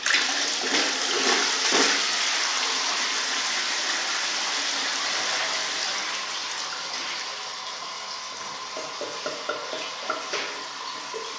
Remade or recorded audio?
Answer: recorded